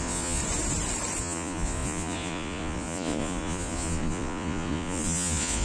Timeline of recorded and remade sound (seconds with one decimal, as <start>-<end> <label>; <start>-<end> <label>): 0.0-0.4 remade; 0.4-1.2 recorded; 1.2-5.6 remade